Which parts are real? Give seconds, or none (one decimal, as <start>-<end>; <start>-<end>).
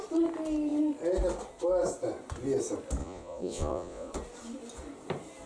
0.0-3.0; 4.1-5.5